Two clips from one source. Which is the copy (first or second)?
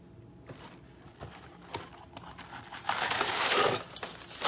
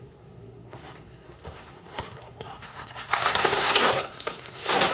second